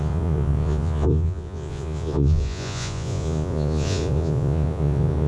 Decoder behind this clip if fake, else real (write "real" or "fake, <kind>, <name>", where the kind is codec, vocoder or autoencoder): fake, vocoder, Vocos